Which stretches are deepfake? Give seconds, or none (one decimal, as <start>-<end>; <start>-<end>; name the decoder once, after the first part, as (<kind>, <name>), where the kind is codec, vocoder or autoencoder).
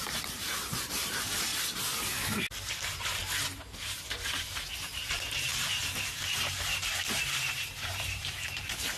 0.0-1.5 (vocoder, BigVGAN v2); 2.7-9.0